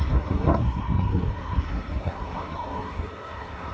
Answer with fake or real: fake